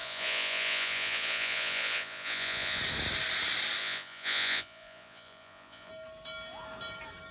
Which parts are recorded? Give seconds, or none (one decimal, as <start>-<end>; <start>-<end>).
2.8-3.8; 5.9-7.3